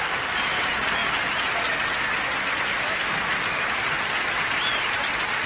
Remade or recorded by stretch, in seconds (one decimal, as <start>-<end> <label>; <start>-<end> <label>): 0.0-5.5 recorded